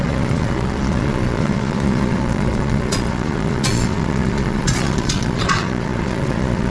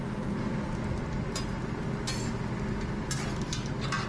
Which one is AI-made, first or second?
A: first